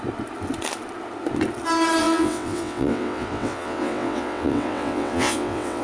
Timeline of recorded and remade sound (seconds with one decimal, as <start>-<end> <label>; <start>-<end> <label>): 0.0-2.0 recorded; 2.0-5.8 remade